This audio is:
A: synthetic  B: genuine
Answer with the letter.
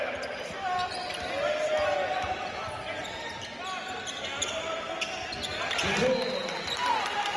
B